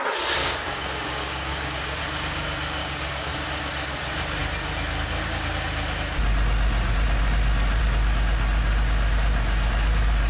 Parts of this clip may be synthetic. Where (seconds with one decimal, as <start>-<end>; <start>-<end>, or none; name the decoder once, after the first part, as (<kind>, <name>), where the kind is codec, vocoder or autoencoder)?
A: 0.4-2.0 (codec, DAC); 2.8-3.3